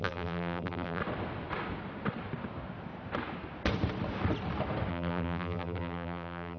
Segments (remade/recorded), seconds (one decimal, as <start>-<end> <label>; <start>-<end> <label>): 0.0-1.0 remade; 1.0-4.9 recorded; 4.9-6.6 remade